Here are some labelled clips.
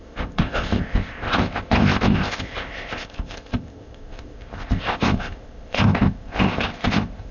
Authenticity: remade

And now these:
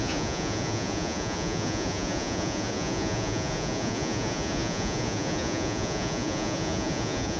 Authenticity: remade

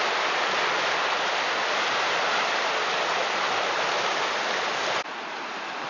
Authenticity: recorded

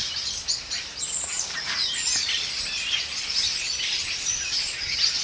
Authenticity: recorded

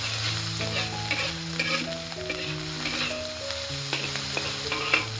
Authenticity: recorded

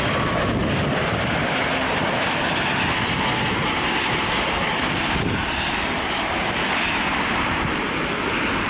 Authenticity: recorded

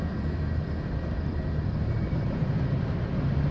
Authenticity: recorded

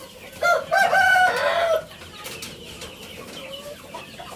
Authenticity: recorded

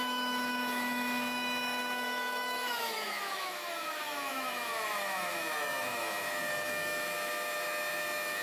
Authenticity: remade